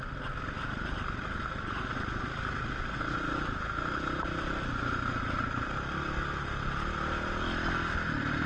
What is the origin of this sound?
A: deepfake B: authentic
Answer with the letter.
B